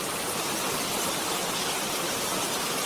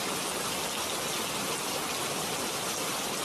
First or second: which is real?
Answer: second